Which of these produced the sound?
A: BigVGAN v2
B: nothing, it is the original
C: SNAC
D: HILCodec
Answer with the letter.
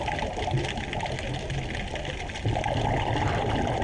B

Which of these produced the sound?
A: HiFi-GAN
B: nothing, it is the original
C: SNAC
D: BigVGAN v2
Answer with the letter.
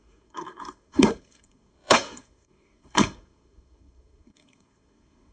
C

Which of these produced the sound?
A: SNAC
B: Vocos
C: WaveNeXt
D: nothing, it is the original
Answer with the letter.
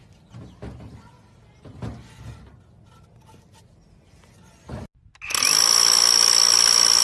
D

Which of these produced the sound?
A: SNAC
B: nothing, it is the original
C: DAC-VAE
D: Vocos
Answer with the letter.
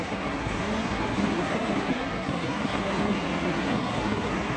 A